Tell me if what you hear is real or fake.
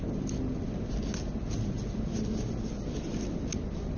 real